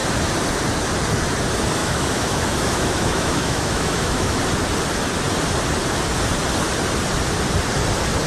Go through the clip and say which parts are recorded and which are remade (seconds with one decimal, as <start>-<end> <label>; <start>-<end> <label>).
0.0-1.8 recorded; 1.8-4.4 remade; 4.4-8.3 recorded